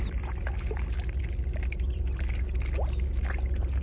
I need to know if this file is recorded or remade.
recorded